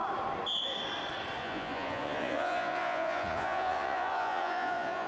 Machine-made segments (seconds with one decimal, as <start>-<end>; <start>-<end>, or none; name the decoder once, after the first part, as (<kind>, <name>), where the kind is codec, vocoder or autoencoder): 1.4-5.1 (vocoder, Vocos)